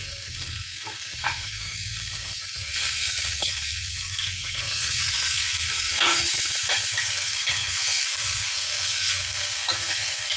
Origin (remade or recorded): remade